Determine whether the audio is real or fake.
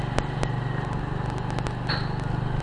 real